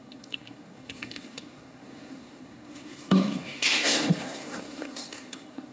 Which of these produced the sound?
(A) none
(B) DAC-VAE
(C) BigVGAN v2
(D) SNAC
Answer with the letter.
D